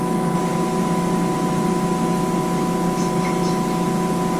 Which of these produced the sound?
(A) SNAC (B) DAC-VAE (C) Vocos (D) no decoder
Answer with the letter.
D